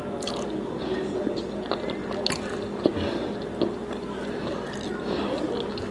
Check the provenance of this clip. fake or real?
real